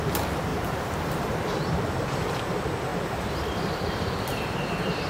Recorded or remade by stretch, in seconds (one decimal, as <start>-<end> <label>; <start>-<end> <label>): 0.0-0.5 recorded; 0.5-1.6 remade; 1.6-2.9 recorded; 2.9-4.0 remade; 4.0-5.1 recorded